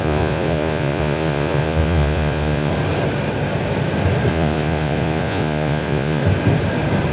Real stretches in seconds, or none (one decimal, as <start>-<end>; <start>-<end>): 2.7-4.3; 6.2-7.1